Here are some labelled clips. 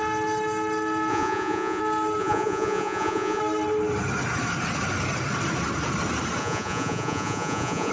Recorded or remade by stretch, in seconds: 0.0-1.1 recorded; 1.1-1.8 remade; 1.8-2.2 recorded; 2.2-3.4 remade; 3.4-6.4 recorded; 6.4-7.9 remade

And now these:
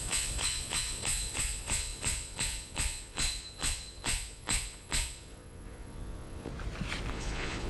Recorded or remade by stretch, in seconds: 0.0-6.5 remade; 6.5-7.1 recorded; 7.1-7.7 remade